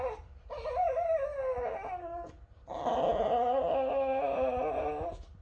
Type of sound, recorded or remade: recorded